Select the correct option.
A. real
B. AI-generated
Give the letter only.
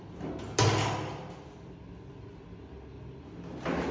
A